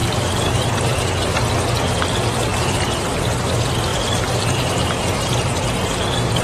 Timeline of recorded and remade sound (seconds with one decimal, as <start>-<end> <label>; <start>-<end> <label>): 0.0-1.5 remade; 1.5-2.5 recorded; 2.5-3.1 remade; 3.1-3.9 recorded; 3.9-6.4 remade